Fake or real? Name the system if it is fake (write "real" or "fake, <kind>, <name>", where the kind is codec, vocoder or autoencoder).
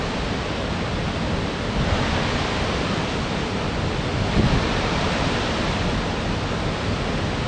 real